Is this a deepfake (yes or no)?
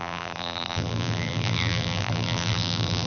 yes